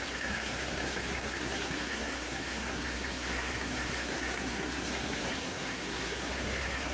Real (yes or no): no